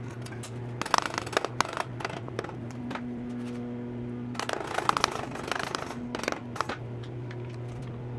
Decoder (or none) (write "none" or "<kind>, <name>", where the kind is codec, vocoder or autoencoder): none